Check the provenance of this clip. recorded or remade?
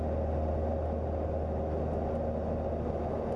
recorded